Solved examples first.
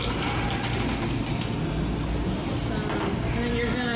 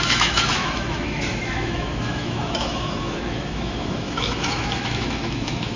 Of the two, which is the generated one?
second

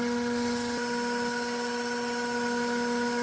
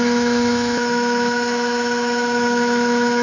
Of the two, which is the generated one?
second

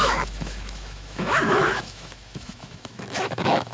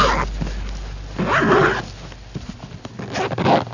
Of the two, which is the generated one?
first